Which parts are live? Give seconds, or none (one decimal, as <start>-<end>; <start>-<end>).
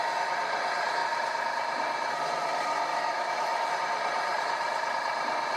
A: 0.0-2.9; 3.7-5.6